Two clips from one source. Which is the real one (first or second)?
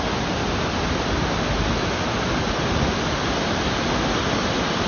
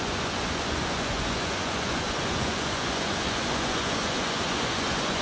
first